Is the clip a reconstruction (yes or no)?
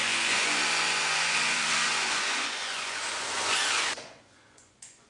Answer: yes